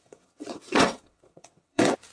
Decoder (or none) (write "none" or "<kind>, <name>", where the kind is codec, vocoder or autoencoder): vocoder, WaveNeXt